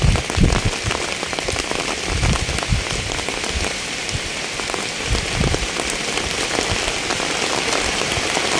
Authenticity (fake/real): real